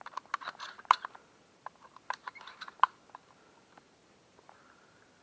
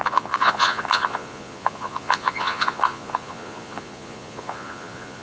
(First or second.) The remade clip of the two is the second